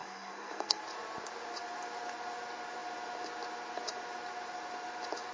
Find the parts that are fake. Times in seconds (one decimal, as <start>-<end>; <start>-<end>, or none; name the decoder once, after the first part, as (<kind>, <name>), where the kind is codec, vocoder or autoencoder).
0.0-0.8 (codec, SNAC)